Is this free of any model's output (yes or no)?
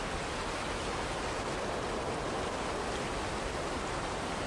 yes